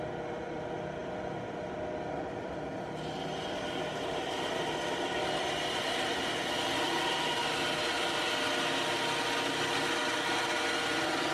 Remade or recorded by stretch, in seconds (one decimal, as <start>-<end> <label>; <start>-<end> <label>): 0.0-11.3 recorded